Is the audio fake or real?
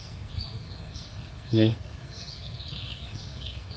fake